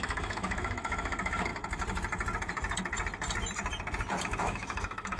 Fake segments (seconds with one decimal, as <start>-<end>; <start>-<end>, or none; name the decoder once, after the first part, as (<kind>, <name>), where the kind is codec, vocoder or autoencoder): 0.0-1.5 (autoencoder, DAC-VAE); 4.2-5.2